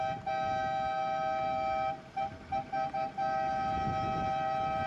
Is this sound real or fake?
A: real